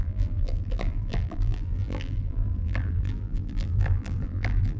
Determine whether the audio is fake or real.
fake